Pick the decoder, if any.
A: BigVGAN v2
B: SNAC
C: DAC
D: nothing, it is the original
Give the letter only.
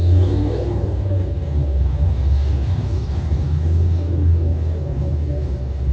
C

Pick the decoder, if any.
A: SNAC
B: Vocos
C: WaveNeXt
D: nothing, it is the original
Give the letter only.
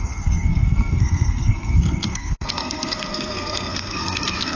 A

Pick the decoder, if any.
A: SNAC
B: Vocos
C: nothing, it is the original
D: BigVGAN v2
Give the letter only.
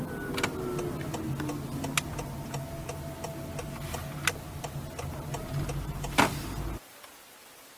C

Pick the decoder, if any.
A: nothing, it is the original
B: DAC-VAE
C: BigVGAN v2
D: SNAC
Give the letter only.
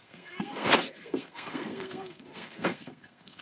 D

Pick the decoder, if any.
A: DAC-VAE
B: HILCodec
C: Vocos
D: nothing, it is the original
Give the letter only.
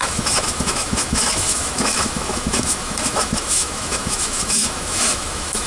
A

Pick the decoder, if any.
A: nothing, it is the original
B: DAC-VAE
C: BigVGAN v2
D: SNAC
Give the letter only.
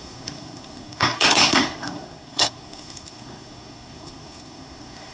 D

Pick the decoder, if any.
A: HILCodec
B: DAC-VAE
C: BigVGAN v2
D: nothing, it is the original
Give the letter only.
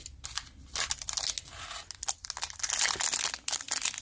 D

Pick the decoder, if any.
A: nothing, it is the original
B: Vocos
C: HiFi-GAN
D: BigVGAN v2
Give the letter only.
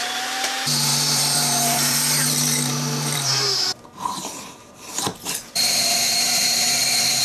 D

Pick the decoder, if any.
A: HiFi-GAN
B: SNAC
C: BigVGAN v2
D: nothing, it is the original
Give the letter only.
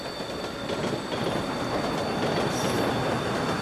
D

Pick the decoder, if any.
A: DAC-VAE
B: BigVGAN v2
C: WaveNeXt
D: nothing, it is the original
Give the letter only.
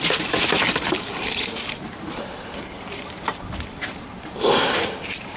B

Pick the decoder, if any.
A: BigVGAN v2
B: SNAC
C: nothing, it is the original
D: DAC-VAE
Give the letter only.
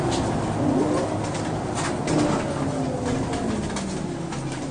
C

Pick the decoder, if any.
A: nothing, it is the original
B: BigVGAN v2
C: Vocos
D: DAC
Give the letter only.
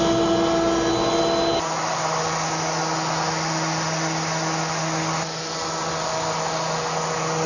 A